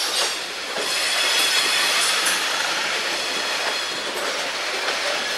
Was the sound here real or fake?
real